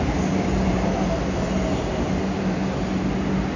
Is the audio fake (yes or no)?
no